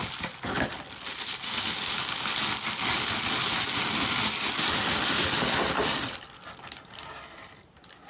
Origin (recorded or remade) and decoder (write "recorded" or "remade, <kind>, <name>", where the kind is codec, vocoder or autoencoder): recorded